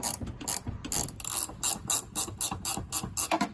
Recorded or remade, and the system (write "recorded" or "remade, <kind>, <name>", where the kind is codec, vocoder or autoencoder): recorded